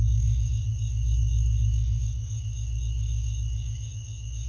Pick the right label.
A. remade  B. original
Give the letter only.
A